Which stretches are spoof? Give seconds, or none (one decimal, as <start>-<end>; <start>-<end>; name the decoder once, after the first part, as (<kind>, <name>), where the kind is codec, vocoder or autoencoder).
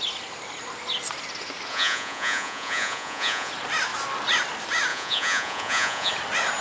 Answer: 1.7-3.5 (vocoder, Vocos); 4.9-6.1